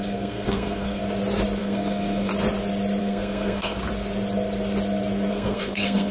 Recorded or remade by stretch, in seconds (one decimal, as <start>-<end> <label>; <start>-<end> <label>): 0.0-1.0 remade; 1.0-1.6 recorded; 1.6-2.3 remade; 2.3-3.0 recorded; 3.0-3.8 remade; 3.8-5.3 recorded; 5.3-6.1 remade